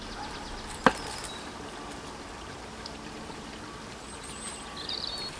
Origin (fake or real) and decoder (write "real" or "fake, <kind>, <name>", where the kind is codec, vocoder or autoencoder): real